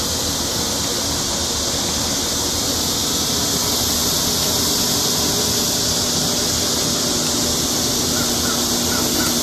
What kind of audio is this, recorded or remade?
recorded